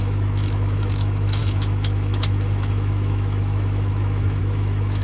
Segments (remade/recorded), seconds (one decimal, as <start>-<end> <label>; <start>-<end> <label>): 0.0-5.0 remade